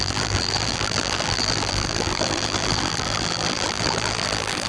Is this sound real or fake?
fake